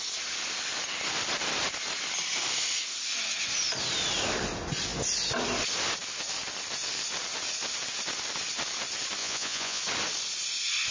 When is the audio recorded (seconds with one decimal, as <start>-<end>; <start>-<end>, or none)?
0.0-9.2; 9.8-10.9